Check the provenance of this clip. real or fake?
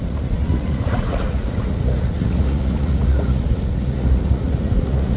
fake